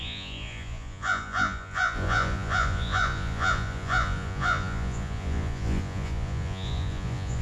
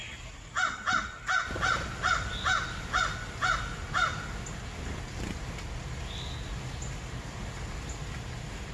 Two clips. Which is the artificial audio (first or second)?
first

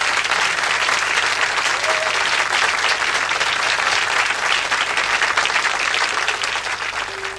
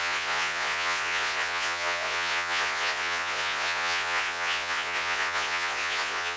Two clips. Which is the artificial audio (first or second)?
second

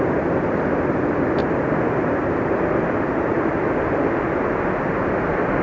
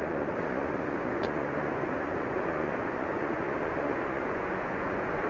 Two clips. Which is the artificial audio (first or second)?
second